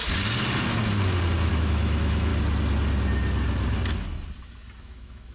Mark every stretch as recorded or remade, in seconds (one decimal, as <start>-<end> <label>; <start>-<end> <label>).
0.0-1.5 recorded; 1.5-2.3 remade; 2.3-4.8 recorded; 4.8-5.3 remade